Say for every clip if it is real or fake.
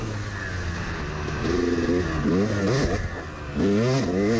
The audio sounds real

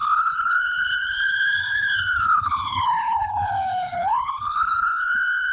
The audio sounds fake